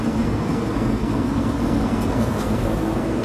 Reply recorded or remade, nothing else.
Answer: remade